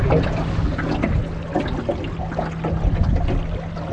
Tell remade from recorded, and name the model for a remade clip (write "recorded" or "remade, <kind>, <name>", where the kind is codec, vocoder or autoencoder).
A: recorded